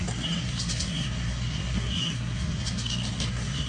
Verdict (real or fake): fake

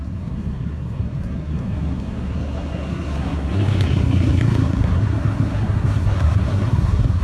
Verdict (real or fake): fake